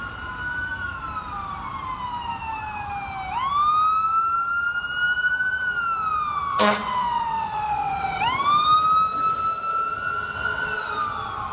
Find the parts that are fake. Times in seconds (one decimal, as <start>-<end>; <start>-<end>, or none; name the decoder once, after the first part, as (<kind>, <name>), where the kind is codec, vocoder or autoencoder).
6.5-8.2 (vocoder, WaveNeXt)